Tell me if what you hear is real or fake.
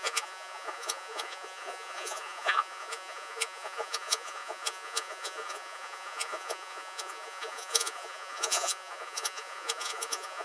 fake